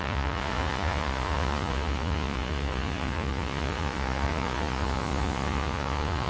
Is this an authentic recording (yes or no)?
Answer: no